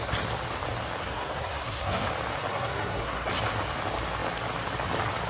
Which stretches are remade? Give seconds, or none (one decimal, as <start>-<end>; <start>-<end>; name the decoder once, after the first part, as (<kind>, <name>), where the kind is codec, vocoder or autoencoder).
1.0-2.1 (codec, SNAC); 2.5-3.3